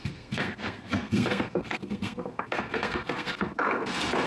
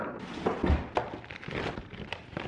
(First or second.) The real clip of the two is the second